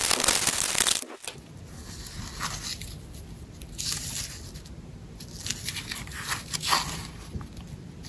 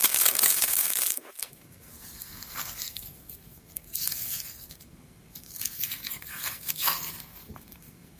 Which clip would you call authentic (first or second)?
first